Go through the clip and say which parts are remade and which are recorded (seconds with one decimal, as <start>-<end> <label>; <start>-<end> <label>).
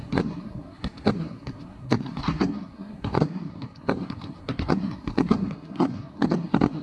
0.0-6.8 remade